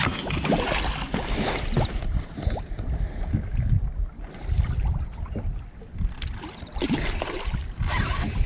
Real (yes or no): yes